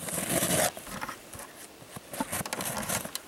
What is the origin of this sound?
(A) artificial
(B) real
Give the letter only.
B